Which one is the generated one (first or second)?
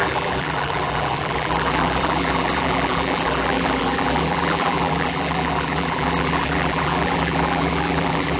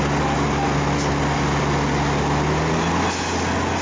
first